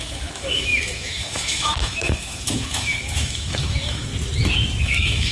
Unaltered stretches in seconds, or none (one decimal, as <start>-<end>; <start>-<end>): 4.1-4.8